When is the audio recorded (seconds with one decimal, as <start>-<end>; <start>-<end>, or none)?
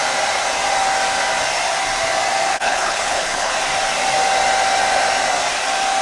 0.0-2.5; 3.5-6.0